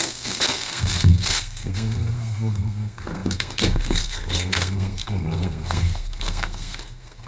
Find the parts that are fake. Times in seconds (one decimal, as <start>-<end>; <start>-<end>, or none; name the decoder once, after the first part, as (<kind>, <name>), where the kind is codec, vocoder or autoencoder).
0.0-7.3 (codec, SNAC)